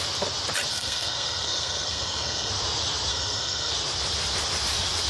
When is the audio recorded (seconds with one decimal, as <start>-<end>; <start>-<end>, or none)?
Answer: 0.0-0.7; 2.5-3.1; 3.7-5.1